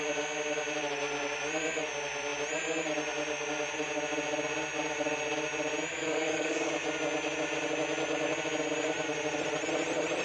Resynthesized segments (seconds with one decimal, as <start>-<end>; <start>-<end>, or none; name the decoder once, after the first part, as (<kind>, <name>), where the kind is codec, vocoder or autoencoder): 5.9-6.7 (codec, DAC)